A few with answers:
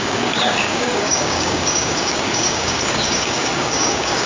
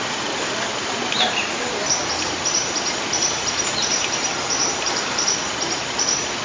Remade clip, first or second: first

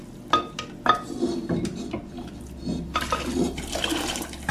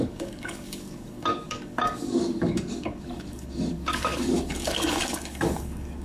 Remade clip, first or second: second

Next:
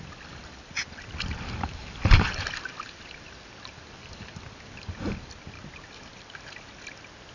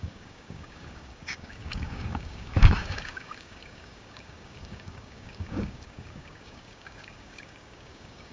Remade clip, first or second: second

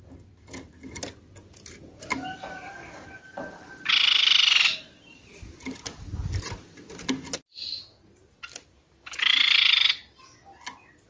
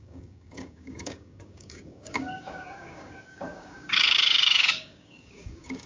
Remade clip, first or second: second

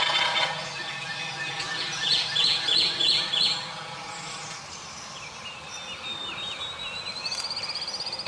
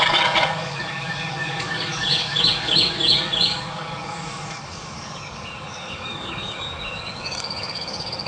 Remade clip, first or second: second